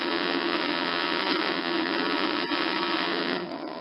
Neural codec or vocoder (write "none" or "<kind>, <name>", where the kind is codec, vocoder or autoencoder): vocoder, WaveNeXt